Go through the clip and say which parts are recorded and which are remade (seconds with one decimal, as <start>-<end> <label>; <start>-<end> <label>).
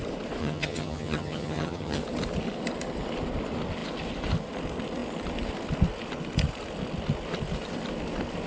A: 0.0-0.4 recorded; 0.4-2.0 remade; 2.0-8.5 recorded